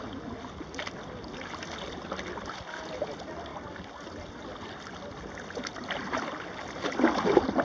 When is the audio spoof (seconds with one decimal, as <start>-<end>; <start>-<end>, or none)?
none